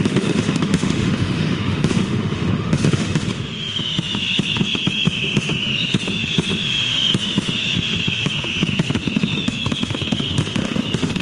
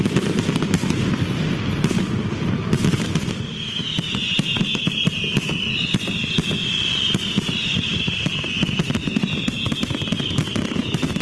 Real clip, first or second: second